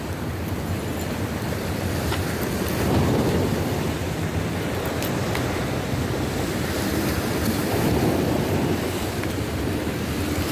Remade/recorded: remade